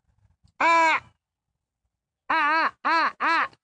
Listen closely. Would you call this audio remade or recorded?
recorded